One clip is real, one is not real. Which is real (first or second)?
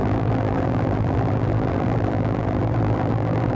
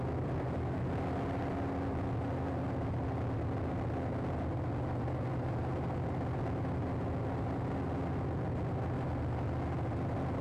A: second